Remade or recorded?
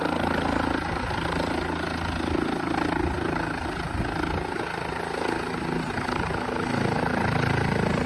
recorded